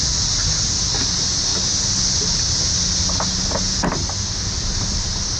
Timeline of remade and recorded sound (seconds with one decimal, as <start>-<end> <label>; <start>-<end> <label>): 0.0-5.4 recorded